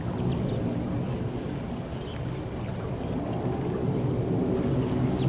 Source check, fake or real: real